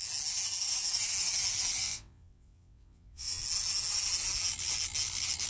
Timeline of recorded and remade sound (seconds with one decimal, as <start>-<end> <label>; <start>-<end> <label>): 0.0-1.8 recorded; 1.8-3.4 remade; 3.4-5.5 recorded